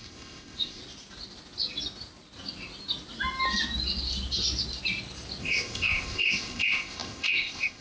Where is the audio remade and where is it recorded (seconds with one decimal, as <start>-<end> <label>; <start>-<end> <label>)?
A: 0.0-0.8 remade; 0.8-5.4 recorded; 5.4-7.8 remade